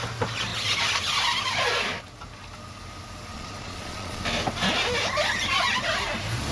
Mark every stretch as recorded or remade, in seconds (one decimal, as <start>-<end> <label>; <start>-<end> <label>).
0.0-3.3 recorded; 3.3-4.2 remade; 4.2-6.5 recorded